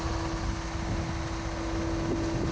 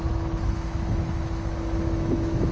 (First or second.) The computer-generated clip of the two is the second